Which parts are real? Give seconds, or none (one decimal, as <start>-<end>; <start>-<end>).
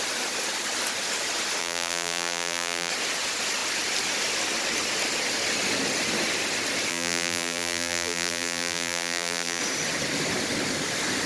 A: 0.0-1.6; 2.9-6.9; 9.6-11.3